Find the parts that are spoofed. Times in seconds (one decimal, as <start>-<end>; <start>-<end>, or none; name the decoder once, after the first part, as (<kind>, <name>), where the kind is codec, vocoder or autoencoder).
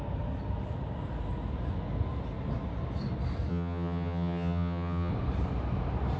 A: 3.5-5.1 (vocoder, HiFi-GAN)